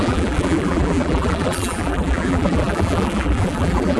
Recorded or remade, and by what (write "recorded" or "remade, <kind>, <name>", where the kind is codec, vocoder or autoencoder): remade, vocoder, BigVGAN v2